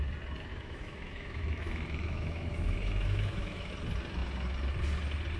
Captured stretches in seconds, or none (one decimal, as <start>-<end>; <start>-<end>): 0.0-0.5; 3.7-5.4